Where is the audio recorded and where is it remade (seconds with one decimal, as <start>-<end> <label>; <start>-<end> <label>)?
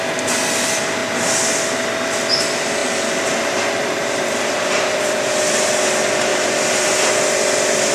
0.0-2.8 recorded; 2.8-5.7 remade; 5.7-6.3 recorded; 6.3-7.1 remade; 7.1-7.9 recorded